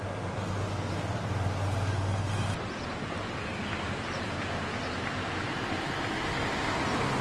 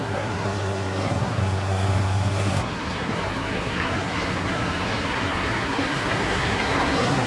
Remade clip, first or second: second